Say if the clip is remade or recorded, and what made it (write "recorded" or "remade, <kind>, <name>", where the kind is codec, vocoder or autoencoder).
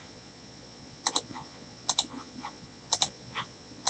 remade, vocoder, Vocos